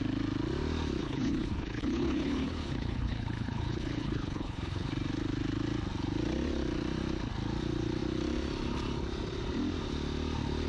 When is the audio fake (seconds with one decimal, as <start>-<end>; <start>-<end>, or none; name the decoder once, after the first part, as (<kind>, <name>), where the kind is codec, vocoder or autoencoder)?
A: 1.0-4.9 (codec, HILCodec)